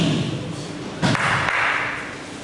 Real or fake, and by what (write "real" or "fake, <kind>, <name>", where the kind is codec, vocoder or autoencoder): real